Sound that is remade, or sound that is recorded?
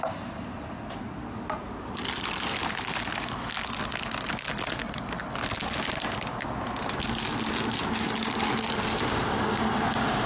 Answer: recorded